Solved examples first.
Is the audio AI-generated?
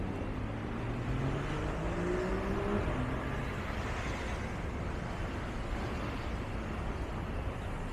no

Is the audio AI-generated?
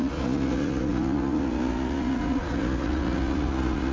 yes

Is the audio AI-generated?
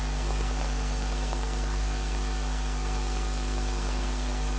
yes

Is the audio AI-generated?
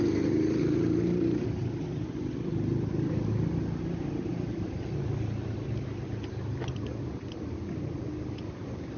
no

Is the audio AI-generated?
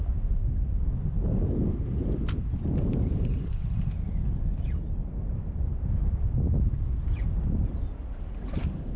no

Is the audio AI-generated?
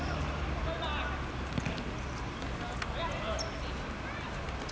no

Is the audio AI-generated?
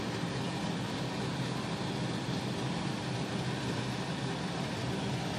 no